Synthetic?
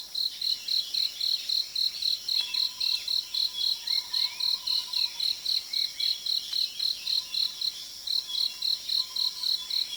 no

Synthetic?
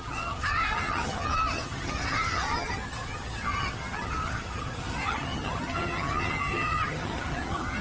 yes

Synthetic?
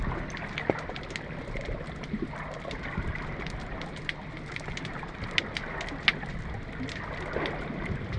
no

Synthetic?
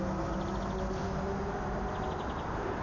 no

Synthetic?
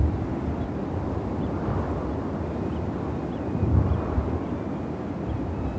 no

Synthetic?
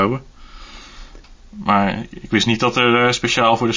no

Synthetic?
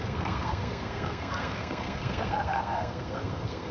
yes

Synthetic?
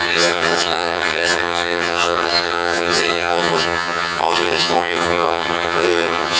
yes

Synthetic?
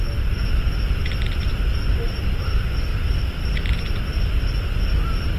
no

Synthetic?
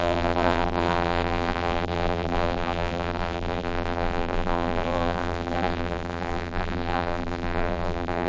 yes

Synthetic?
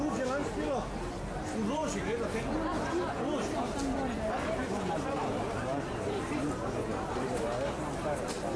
no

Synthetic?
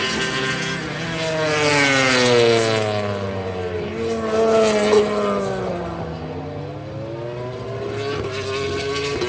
no